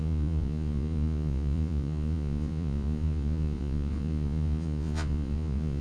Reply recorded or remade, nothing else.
remade